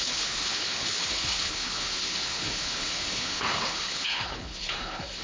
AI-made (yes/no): yes